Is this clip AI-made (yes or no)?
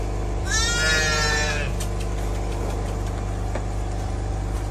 no